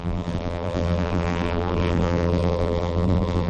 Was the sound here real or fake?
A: fake